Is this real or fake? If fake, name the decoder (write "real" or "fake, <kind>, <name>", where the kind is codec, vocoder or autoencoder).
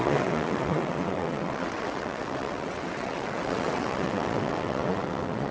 fake, vocoder, WaveNeXt